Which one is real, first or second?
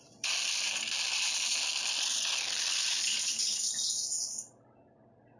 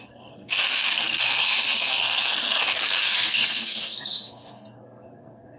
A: first